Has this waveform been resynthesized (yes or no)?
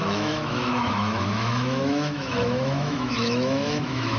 yes